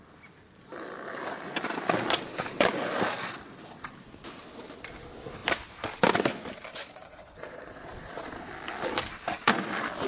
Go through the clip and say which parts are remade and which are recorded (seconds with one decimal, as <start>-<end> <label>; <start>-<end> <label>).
0.0-6.7 recorded; 6.7-8.5 remade; 8.5-10.1 recorded

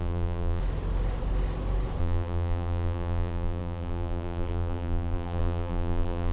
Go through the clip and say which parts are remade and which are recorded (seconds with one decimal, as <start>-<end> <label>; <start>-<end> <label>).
0.0-0.6 remade; 0.6-2.0 recorded; 2.0-6.3 remade

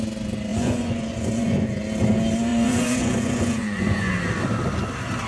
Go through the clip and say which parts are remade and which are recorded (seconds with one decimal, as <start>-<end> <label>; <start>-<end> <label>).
0.0-0.5 recorded; 0.5-1.8 remade; 1.8-2.5 recorded; 2.5-4.1 remade; 4.1-5.3 recorded

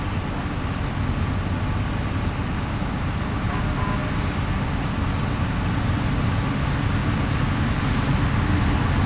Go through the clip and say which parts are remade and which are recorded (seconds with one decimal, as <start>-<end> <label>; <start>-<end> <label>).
0.0-9.1 recorded

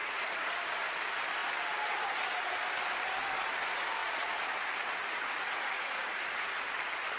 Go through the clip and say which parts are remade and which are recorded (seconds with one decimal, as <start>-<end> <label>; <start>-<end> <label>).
0.0-0.5 remade; 0.5-4.0 recorded; 4.0-6.6 remade; 6.6-7.2 recorded

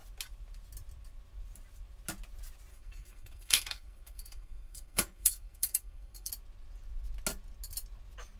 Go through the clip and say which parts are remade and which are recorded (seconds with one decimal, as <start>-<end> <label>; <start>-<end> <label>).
0.0-2.7 recorded; 2.7-6.3 remade; 6.3-8.4 recorded